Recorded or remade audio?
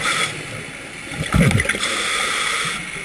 recorded